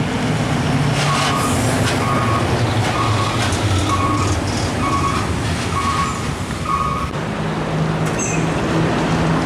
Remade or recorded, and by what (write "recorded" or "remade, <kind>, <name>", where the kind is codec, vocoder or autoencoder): recorded